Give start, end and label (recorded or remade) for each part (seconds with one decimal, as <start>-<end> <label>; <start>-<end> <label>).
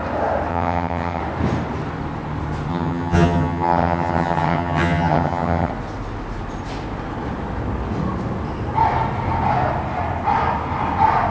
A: 0.0-0.5 recorded; 0.5-1.2 remade; 1.2-2.7 recorded; 2.7-5.7 remade; 5.7-11.3 recorded